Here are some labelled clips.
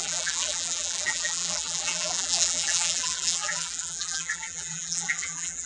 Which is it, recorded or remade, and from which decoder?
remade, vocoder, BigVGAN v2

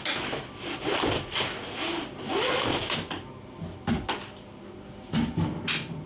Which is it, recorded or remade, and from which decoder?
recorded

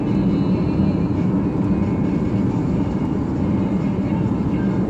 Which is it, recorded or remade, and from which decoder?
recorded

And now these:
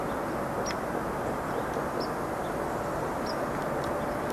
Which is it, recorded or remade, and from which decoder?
recorded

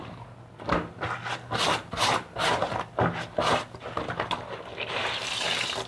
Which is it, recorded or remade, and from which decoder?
recorded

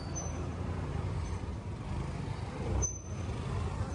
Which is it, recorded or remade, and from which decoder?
remade, vocoder, BigVGAN v2